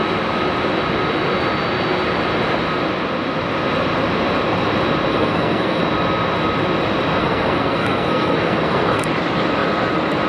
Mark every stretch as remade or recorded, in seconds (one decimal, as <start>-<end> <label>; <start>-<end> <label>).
0.0-5.1 recorded; 5.1-5.8 remade; 5.8-7.2 recorded; 7.2-9.1 remade; 9.1-10.3 recorded